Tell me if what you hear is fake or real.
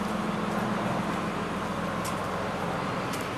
real